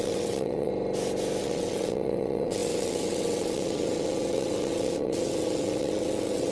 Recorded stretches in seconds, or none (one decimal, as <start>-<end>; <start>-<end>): 0.7-1.4